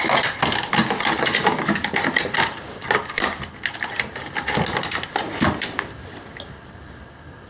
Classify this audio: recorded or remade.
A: recorded